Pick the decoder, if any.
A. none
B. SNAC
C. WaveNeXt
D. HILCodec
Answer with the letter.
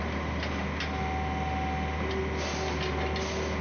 A